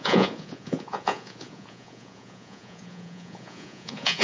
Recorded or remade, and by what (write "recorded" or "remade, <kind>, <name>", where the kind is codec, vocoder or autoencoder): remade, vocoder, Vocos